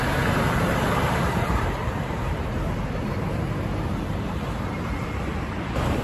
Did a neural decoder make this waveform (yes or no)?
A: yes